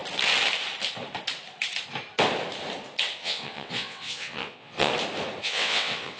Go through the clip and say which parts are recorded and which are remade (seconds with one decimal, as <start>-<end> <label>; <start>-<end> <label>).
0.0-3.1 recorded; 3.1-4.9 remade; 4.9-5.4 recorded; 5.4-6.2 remade